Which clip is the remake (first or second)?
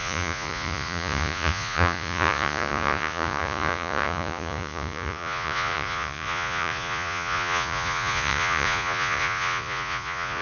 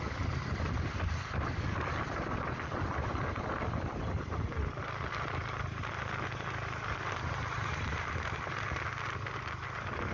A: first